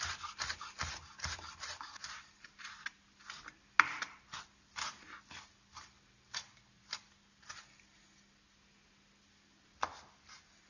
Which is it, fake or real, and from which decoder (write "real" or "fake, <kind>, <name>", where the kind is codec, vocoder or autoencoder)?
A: real